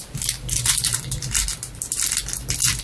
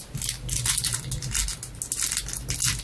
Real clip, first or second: second